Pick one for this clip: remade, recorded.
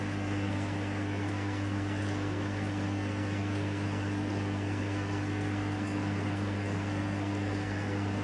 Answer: remade